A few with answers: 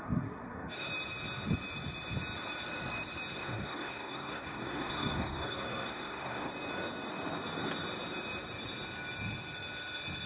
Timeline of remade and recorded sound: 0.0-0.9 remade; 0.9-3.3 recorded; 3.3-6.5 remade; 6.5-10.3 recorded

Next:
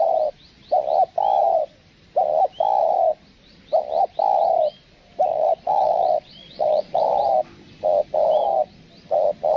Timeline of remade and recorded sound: 0.0-5.3 recorded; 5.3-7.0 remade; 7.0-9.6 recorded

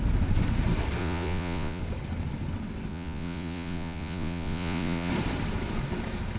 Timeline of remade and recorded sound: 0.0-1.0 recorded; 1.0-1.8 remade; 1.8-2.9 recorded; 2.9-5.1 remade; 5.1-6.4 recorded

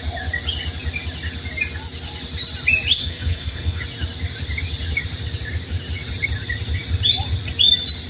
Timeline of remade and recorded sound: 0.0-3.0 recorded; 3.0-3.8 remade; 3.8-8.1 recorded

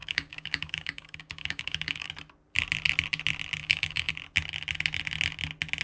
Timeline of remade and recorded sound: 0.0-2.1 remade; 2.1-3.6 recorded; 3.6-4.1 remade; 4.1-5.8 recorded